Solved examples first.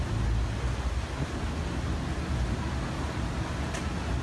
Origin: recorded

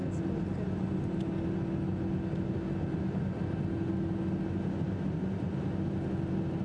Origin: recorded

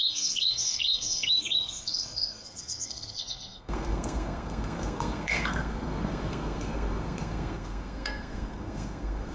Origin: remade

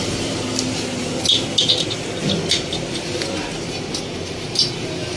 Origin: recorded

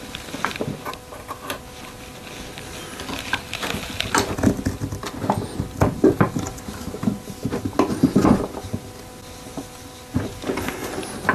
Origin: recorded